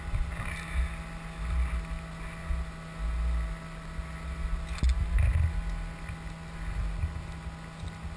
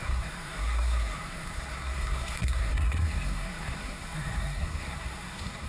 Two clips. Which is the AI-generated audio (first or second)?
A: second